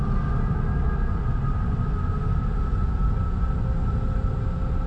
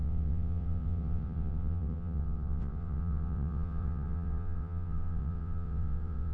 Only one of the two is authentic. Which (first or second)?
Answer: first